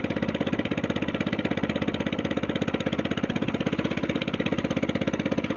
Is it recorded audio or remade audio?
recorded